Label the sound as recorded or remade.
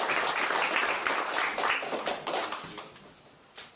recorded